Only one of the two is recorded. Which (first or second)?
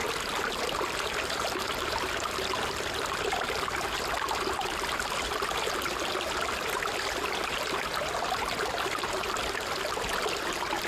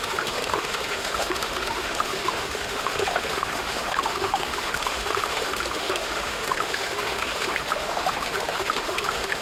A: first